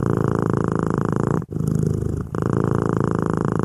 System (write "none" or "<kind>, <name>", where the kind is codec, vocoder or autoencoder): none